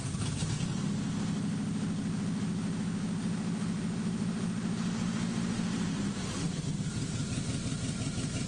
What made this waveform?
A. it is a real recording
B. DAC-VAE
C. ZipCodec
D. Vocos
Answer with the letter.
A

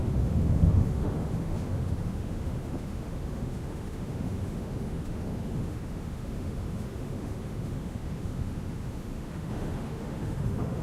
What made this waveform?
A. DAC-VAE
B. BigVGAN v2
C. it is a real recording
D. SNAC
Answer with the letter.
A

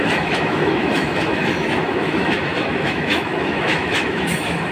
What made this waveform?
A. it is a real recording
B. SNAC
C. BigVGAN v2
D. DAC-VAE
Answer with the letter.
D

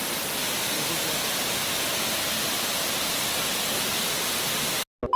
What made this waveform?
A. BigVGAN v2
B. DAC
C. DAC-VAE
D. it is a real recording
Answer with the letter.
D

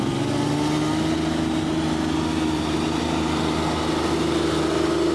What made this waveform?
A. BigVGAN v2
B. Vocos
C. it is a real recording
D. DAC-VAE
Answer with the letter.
C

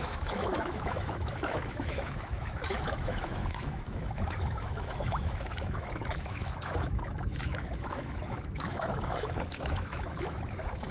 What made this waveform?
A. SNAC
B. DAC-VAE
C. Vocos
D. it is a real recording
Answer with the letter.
B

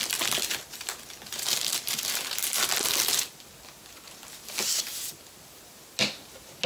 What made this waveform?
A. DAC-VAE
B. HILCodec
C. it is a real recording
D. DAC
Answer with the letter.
C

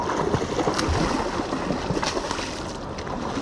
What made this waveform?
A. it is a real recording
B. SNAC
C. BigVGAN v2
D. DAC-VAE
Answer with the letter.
A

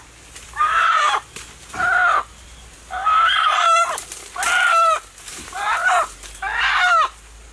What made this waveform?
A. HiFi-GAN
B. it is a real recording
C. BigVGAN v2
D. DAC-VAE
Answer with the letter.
B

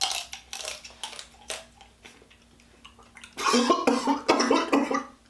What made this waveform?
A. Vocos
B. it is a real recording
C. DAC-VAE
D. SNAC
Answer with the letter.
B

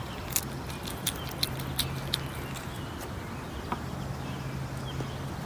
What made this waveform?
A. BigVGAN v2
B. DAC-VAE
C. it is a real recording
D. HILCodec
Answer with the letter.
C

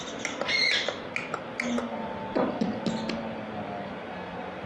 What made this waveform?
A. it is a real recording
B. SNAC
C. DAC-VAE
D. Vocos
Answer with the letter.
A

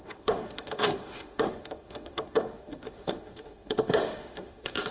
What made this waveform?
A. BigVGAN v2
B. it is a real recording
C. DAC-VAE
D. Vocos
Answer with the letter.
C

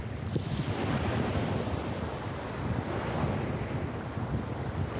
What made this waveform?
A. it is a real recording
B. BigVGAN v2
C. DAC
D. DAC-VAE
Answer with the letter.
A